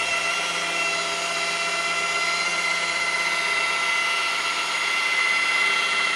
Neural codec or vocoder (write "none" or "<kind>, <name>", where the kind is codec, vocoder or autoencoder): none